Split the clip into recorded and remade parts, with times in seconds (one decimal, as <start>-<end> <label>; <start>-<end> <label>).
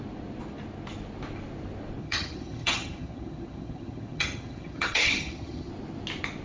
0.0-2.0 recorded; 2.0-5.7 remade; 5.7-6.4 recorded